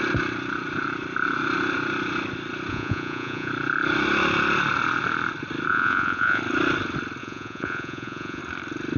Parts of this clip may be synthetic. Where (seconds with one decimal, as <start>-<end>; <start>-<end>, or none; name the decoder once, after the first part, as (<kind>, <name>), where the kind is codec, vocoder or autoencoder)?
2.7-3.5 (vocoder, Vocos); 5.7-6.4; 7.2-8.4